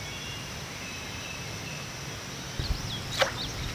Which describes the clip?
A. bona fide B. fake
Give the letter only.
A